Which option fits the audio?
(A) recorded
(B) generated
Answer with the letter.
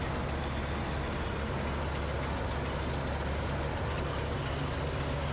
A